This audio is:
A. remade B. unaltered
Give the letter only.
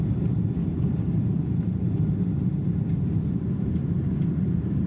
B